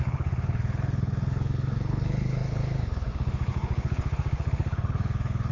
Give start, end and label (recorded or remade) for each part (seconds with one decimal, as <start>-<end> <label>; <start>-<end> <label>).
0.0-5.5 remade